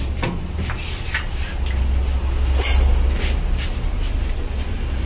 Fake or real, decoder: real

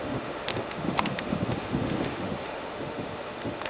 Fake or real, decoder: fake, autoencoder, DAC-VAE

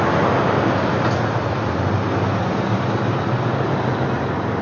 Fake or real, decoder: real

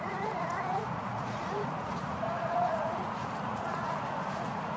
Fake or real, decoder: fake, vocoder, Vocos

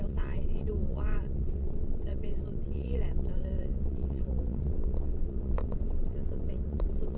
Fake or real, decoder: fake, vocoder, WaveNeXt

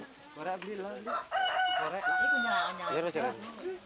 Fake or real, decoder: real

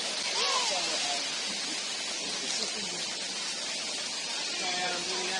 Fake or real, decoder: real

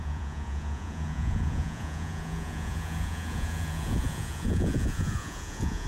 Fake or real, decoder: fake, vocoder, Vocos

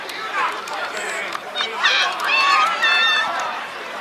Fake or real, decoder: fake, vocoder, BigVGAN v2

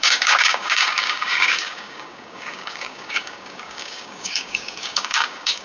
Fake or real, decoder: fake, codec, DAC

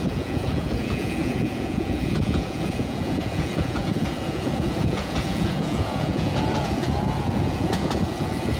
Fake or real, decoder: fake, vocoder, Vocos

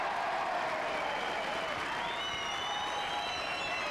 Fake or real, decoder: real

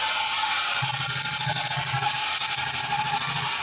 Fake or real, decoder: real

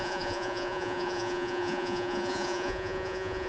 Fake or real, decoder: fake, vocoder, Vocos